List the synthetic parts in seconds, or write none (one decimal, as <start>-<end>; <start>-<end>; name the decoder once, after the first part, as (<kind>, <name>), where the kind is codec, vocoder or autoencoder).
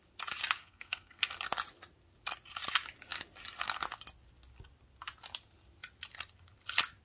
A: 0.6-1.2 (codec, SNAC)